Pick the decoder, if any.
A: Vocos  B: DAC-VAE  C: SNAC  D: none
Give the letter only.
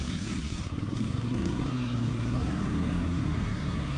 C